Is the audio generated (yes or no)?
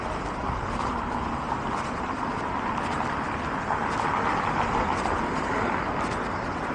no